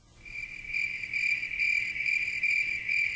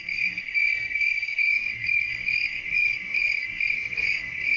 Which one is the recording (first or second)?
first